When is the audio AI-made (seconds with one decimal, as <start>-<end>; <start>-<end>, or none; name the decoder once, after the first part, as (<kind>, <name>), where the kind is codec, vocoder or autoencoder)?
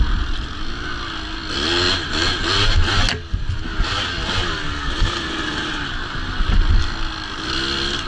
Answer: none